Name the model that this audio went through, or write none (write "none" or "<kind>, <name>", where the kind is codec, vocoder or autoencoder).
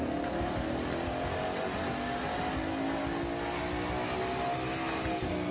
none